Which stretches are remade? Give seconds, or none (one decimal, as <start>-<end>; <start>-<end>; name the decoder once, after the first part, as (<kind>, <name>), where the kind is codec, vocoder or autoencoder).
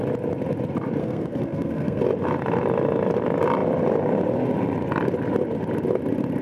1.0-2.0 (codec, SNAC)